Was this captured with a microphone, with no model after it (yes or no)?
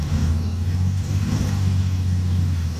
no